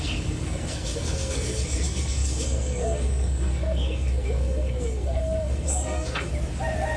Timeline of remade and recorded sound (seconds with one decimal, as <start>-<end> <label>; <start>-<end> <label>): 0.0-6.3 remade; 6.3-7.0 recorded